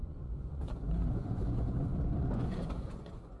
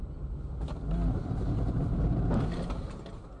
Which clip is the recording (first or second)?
second